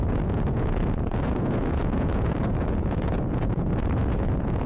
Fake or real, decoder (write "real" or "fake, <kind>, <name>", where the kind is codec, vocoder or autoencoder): fake, vocoder, Vocos